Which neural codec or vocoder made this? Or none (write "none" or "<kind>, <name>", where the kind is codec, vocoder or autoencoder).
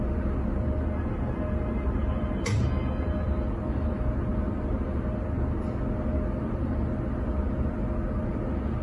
none